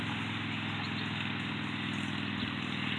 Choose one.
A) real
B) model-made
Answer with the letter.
A